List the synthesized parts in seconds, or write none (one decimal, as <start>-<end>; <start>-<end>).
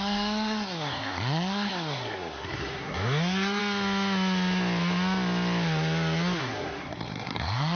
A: 0.0-3.6; 6.4-7.8